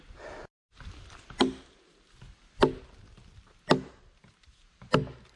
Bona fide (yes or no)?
yes